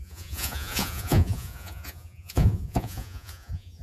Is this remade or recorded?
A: remade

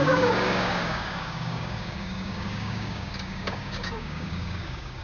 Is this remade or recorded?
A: remade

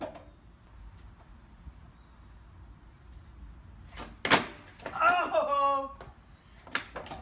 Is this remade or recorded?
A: recorded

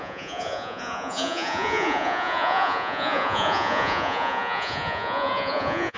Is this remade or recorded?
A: remade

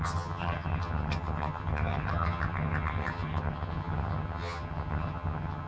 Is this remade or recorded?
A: remade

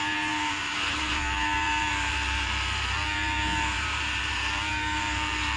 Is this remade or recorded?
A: remade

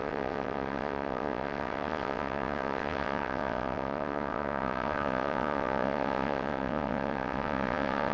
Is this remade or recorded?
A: remade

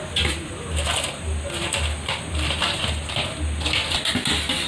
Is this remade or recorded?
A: recorded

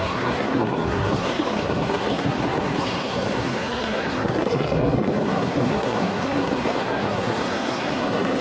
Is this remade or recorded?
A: remade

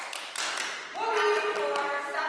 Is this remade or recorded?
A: recorded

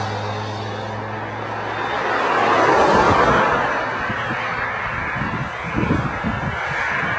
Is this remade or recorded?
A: recorded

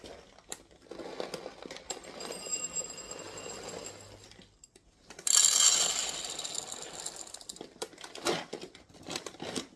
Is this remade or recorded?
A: recorded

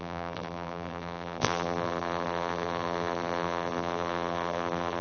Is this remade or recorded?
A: remade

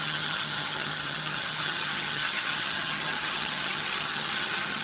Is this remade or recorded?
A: remade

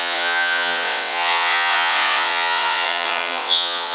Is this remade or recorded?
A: remade